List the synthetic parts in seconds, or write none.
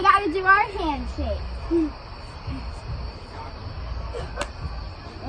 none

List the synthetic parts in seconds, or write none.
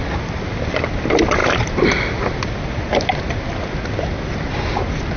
none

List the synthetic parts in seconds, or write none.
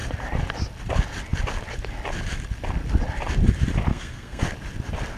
3.9-4.4 (codec, SNAC)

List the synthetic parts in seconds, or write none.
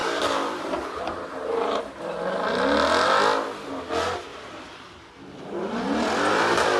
0.0-1.8 (vocoder, BigVGAN v2); 4.3-5.2